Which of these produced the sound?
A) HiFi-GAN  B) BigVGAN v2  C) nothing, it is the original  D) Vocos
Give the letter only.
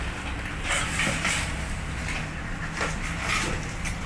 C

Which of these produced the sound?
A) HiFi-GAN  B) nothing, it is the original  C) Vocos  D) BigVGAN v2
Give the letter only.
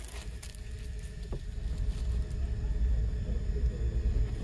B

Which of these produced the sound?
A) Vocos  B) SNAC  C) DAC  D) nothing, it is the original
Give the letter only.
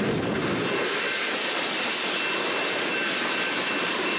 D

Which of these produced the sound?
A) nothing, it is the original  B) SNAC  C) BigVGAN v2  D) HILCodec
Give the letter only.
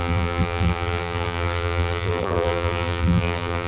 C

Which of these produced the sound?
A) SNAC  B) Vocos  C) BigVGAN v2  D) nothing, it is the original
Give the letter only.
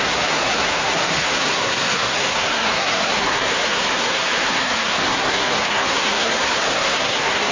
A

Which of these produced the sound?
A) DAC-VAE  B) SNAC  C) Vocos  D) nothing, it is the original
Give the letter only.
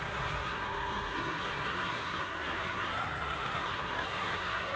B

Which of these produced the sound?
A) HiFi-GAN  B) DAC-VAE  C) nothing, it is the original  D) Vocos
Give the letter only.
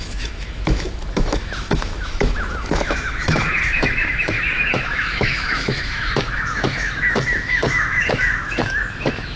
B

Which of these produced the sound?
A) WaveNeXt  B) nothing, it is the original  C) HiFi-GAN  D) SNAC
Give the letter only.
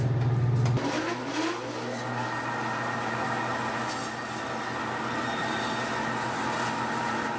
B